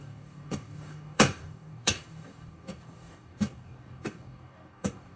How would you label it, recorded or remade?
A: remade